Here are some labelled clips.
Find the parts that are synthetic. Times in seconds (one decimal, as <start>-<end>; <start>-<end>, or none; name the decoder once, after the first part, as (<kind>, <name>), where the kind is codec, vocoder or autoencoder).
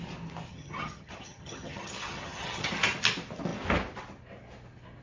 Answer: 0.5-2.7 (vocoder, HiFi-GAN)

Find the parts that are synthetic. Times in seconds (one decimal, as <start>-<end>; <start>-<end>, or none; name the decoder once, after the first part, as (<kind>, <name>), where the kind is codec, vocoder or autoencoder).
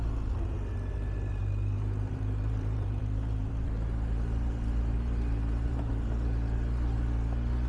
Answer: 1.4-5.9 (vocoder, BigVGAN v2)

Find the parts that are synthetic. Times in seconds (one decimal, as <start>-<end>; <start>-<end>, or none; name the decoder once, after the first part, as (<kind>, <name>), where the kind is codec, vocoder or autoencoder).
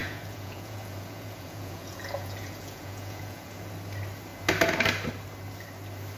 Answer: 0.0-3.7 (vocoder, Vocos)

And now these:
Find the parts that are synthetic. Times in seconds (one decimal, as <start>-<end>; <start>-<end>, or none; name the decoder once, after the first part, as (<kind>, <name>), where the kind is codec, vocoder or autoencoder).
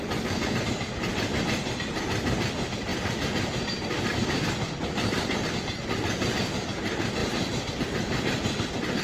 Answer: 2.9-5.5 (vocoder, BigVGAN v2); 7.2-7.8